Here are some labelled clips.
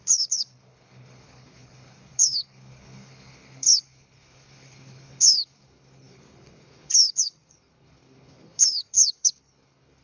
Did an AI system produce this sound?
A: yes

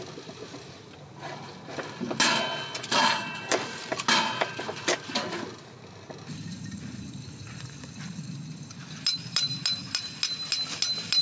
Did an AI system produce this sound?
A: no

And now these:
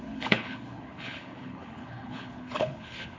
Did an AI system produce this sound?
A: yes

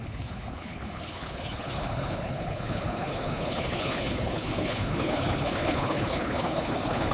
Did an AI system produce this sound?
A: yes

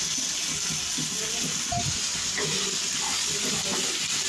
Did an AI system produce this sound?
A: no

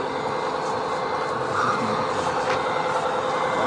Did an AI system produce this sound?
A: no